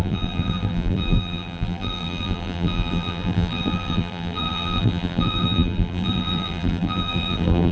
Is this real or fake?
fake